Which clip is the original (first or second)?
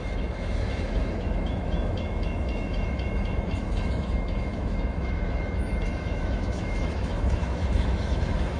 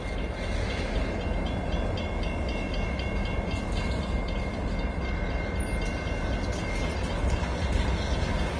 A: second